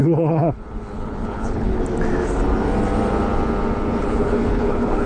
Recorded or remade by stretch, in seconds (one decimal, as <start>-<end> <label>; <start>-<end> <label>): 0.0-1.8 remade; 1.8-4.0 recorded; 4.0-5.1 remade